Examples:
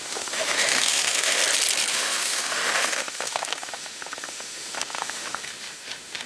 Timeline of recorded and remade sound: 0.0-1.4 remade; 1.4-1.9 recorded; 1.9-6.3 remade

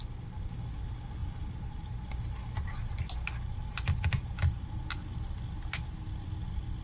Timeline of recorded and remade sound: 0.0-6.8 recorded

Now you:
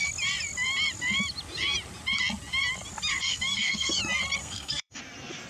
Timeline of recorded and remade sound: 0.0-3.1 recorded; 3.1-4.0 remade; 4.0-4.4 recorded; 4.4-5.0 remade; 5.0-5.5 recorded